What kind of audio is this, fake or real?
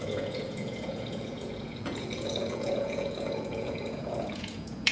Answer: fake